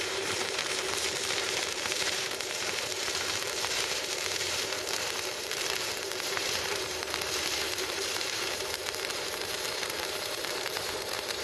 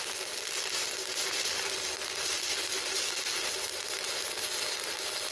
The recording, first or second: second